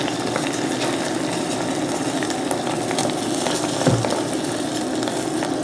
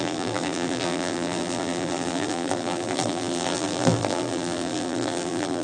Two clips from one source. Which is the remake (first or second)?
second